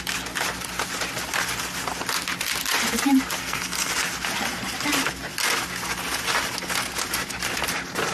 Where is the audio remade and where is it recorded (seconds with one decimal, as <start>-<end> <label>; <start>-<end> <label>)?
0.0-3.4 recorded; 3.4-3.9 remade; 3.9-8.1 recorded